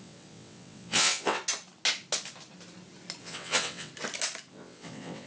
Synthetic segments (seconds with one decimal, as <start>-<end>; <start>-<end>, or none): 0.0-1.4; 3.2-3.9; 4.5-5.3